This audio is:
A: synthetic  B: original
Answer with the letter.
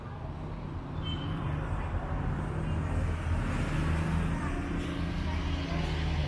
B